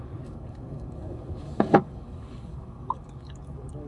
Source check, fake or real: fake